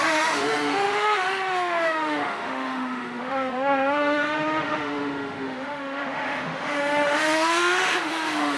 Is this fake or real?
fake